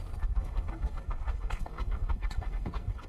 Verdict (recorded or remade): remade